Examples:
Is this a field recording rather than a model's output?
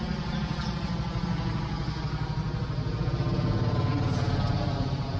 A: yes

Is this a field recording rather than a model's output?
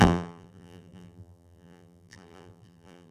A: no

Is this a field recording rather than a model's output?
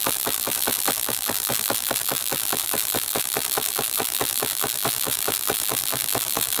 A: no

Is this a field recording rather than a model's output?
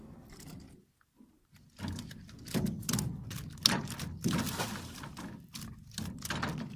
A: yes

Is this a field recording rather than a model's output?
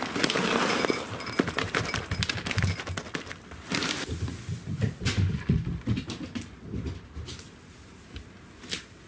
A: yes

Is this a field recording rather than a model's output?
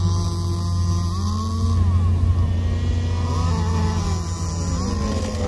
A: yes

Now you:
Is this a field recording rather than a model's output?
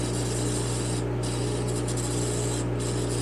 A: yes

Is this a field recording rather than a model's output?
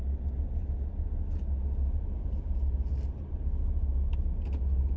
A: yes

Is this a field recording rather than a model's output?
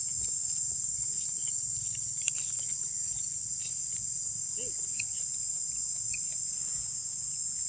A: no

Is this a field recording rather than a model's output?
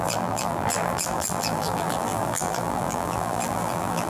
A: no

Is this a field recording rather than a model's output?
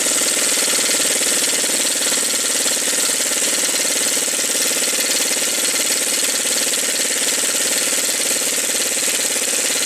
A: yes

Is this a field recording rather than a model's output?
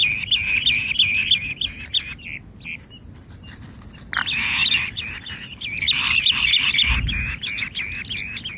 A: yes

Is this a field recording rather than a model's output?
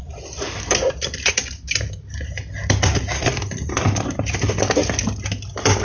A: no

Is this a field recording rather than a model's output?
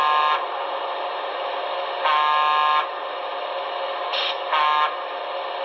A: yes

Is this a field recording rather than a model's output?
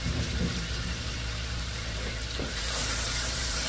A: no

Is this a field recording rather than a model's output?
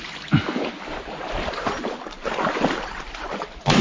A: yes